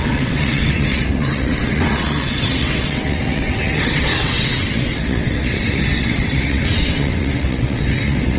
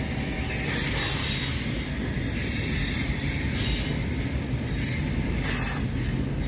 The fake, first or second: first